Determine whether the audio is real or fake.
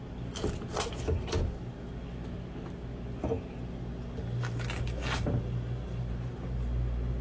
real